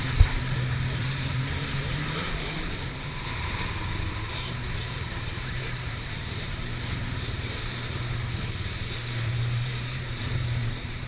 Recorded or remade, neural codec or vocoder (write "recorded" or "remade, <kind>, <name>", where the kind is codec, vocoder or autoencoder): remade, vocoder, BigVGAN v2